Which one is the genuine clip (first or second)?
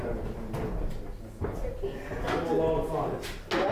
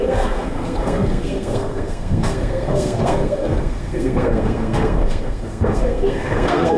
first